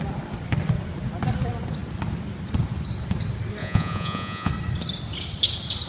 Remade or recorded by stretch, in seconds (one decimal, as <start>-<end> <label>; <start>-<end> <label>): 0.0-3.6 recorded; 3.6-4.5 remade; 4.5-5.9 recorded